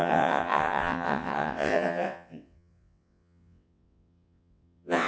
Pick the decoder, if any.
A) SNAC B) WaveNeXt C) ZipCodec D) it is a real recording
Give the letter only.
B